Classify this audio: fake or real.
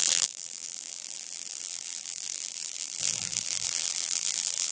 fake